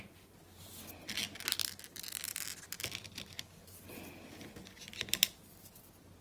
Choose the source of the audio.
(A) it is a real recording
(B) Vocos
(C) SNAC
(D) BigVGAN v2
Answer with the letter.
A